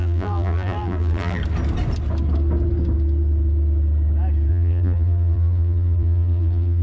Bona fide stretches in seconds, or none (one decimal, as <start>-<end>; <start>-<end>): 1.4-4.5